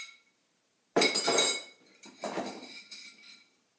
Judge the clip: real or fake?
fake